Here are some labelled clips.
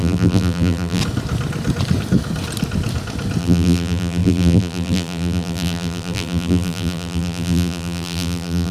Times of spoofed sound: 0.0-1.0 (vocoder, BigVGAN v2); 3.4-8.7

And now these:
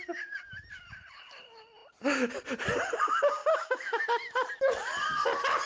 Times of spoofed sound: 3.4-4.0 (autoencoder, DAC-VAE)

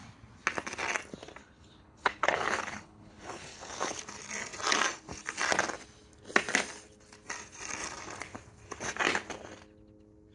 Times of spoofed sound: 1.4-4.0 (codec, HILCodec)